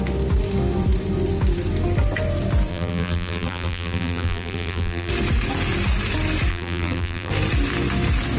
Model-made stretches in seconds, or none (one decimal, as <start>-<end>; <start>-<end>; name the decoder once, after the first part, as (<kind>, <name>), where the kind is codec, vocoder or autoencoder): 2.7-5.1 (vocoder, BigVGAN v2); 6.5-7.3